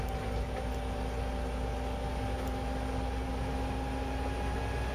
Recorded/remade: recorded